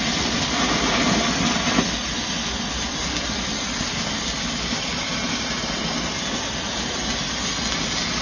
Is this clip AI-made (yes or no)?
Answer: no